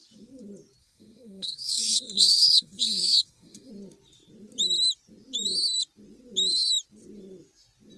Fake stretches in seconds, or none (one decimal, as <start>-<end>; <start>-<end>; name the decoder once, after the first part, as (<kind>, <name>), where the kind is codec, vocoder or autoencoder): 0.8-3.7 (codec, SNAC)